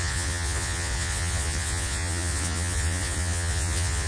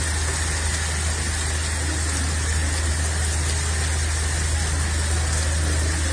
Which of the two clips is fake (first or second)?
first